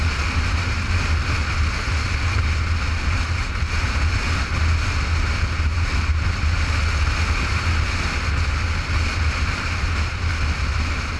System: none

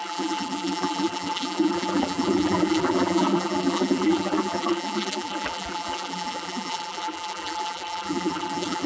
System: vocoder, BigVGAN v2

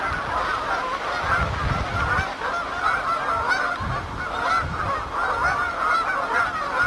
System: none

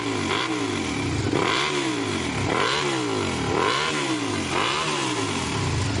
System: none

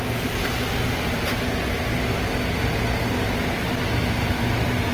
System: none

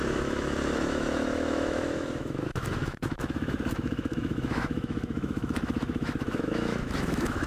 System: autoencoder, DAC-VAE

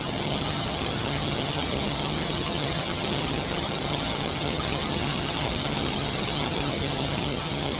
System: vocoder, HiFi-GAN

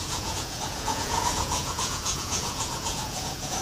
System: vocoder, Vocos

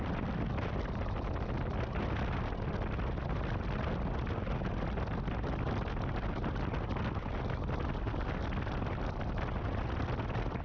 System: none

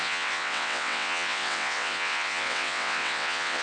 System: vocoder, WaveNeXt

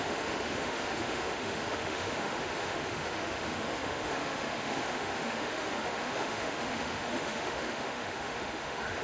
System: autoencoder, DAC-VAE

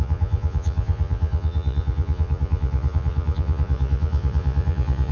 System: vocoder, Vocos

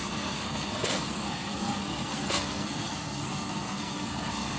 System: codec, SNAC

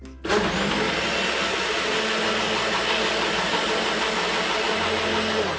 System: none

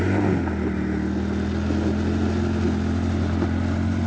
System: none